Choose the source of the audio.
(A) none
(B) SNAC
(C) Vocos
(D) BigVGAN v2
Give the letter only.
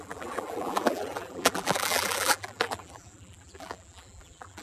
D